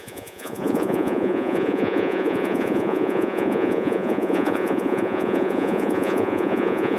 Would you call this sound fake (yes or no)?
yes